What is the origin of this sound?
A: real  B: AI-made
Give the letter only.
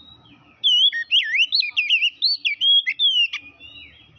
A